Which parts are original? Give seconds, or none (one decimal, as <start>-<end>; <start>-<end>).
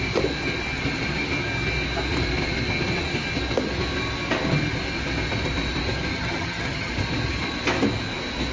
0.0-6.1; 6.9-8.5